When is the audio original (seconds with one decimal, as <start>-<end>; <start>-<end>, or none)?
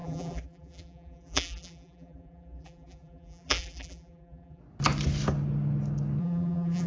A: 4.6-6.2